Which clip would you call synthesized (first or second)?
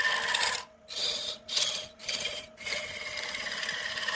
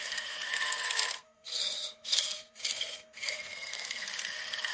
second